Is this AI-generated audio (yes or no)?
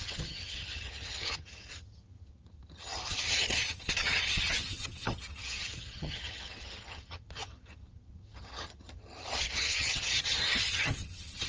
yes